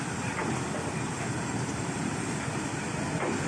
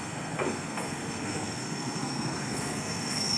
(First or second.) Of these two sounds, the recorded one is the first